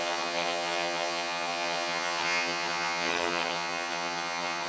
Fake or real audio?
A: fake